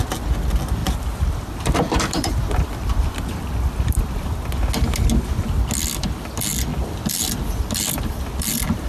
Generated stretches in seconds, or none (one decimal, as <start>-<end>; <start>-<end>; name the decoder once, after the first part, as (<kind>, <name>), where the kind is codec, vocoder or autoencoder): 0.8-4.5 (vocoder, BigVGAN v2); 6.7-8.9